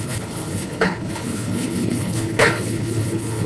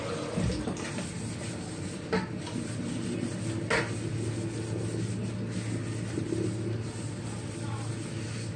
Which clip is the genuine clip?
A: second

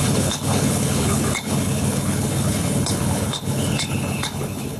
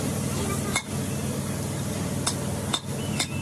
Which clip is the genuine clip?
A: second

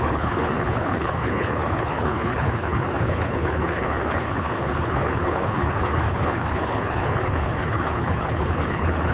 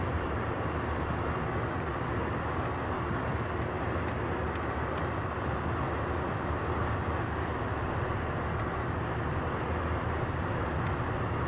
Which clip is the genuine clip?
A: second